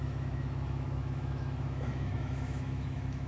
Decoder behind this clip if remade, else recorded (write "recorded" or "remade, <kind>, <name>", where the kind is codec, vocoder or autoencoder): remade, autoencoder, DAC-VAE